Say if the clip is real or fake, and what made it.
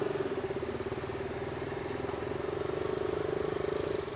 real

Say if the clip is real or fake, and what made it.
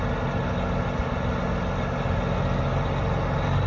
real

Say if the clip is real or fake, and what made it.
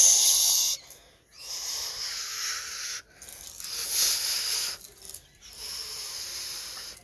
real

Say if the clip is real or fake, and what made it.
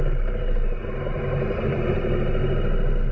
real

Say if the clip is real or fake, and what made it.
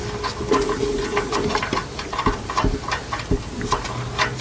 real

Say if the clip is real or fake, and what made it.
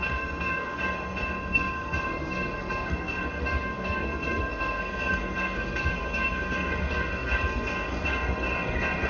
fake, codec, SNAC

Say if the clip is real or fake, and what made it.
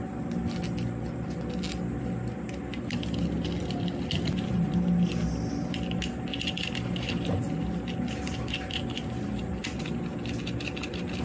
real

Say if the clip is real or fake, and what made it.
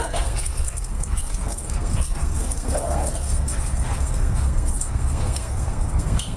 fake, codec, SNAC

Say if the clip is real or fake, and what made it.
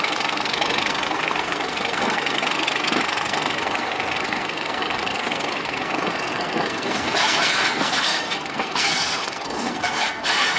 fake, codec, SNAC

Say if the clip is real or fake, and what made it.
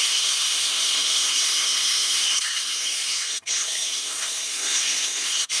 fake, codec, SNAC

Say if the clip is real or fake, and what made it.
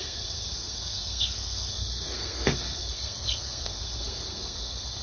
fake, codec, SNAC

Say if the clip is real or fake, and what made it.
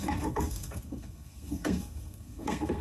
fake, codec, SNAC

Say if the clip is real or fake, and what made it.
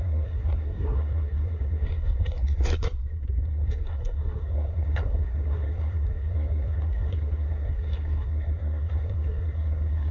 fake, codec, SNAC